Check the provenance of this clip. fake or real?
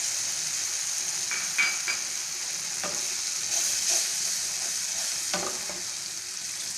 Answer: real